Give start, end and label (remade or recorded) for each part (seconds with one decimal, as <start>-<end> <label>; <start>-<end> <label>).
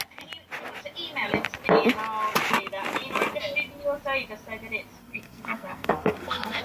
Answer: 0.0-5.0 recorded; 5.0-6.6 remade